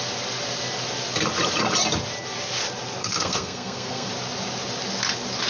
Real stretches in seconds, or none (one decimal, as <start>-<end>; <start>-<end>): 0.0-3.0; 4.1-5.5

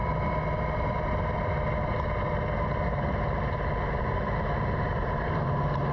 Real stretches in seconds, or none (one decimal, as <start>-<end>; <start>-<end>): 0.0-5.9

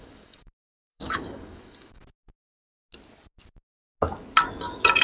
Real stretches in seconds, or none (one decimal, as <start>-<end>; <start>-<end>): 2.0-5.0

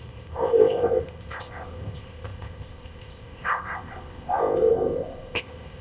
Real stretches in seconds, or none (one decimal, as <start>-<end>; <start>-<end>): none

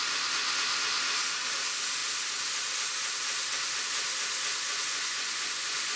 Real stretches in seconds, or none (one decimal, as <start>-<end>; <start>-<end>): 0.0-4.7

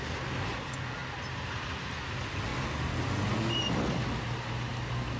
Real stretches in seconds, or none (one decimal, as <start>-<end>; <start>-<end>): 0.0-5.2